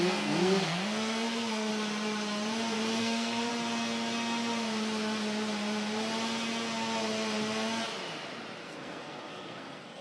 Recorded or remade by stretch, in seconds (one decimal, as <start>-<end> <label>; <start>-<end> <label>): 0.0-1.7 remade; 1.7-3.0 recorded; 3.0-3.5 remade; 3.5-8.6 recorded; 8.6-10.0 remade